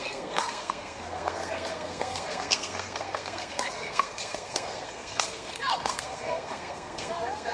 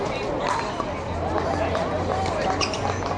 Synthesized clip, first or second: first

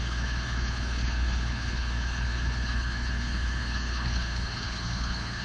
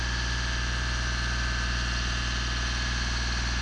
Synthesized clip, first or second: first